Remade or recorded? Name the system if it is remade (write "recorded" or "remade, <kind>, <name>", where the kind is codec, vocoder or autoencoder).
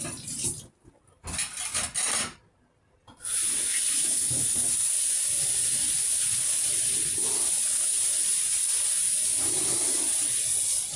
recorded